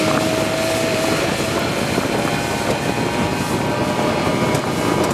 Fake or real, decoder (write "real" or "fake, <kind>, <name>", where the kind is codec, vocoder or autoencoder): real